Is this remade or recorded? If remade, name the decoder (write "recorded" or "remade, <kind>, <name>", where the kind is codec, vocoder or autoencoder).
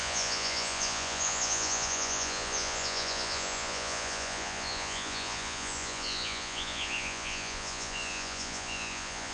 remade, vocoder, Vocos